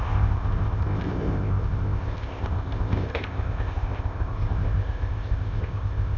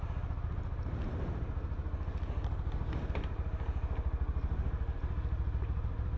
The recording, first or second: second